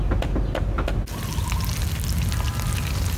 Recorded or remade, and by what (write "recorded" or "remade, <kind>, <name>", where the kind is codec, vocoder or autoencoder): recorded